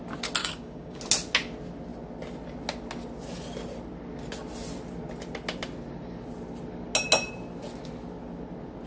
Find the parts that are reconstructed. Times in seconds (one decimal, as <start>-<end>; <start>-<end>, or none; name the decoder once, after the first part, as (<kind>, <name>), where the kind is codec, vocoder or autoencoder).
0.4-1.0 (codec, DAC)